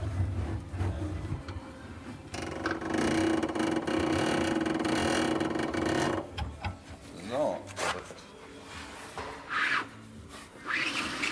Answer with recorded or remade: recorded